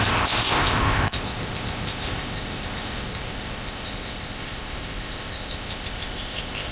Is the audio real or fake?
fake